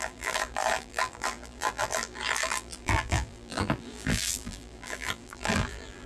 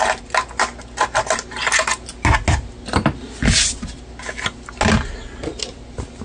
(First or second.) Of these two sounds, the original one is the second